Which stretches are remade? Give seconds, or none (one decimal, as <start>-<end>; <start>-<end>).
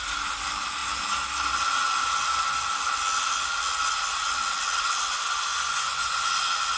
5.5-6.2